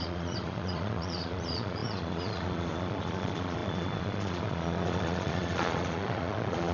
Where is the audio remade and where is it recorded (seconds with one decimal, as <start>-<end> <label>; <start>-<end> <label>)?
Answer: 0.0-6.7 remade